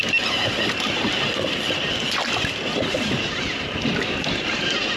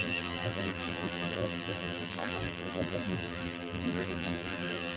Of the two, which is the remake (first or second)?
second